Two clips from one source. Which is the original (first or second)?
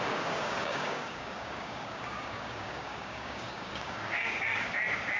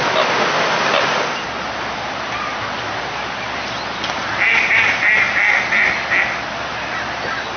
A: second